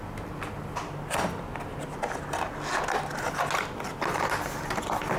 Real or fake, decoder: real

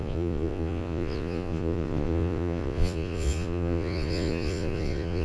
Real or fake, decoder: fake, vocoder, Vocos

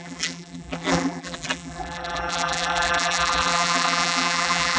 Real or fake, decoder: fake, vocoder, BigVGAN v2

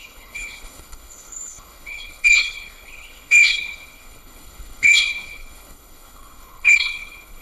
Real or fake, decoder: fake, codec, HILCodec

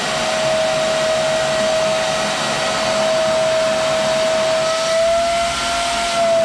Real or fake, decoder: real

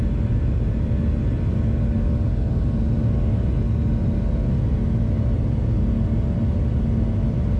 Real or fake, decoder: real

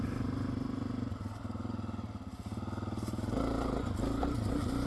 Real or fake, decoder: real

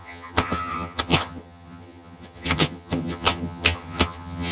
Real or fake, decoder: fake, vocoder, HiFi-GAN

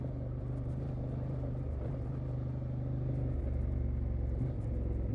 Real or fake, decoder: real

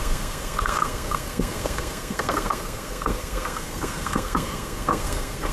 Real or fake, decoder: fake, codec, SNAC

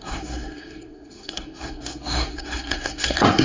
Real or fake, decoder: fake, codec, SNAC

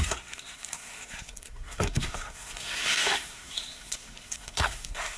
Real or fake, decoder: fake, codec, SNAC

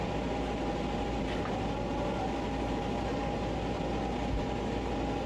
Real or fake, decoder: real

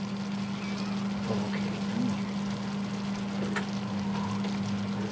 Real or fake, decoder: real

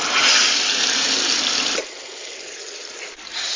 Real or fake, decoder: real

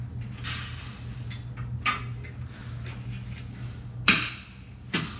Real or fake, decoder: real